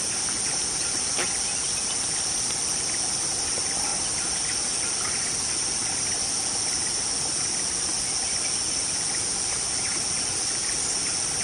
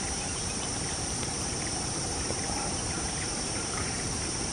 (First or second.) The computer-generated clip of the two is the second